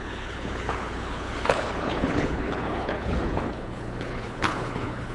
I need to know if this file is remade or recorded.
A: remade